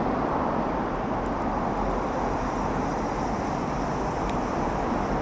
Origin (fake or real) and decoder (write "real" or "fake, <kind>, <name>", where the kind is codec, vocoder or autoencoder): real